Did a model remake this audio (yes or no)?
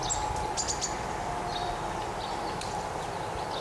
no